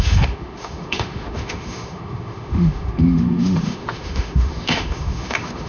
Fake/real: fake